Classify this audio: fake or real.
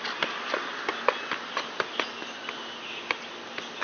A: real